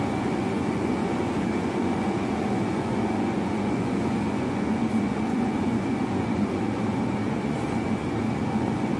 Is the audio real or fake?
fake